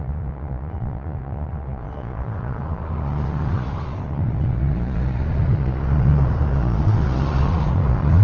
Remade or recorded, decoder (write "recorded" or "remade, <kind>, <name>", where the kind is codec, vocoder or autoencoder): remade, vocoder, Vocos